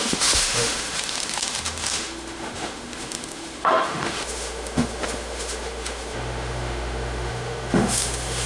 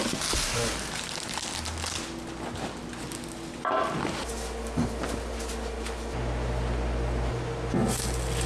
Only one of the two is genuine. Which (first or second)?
second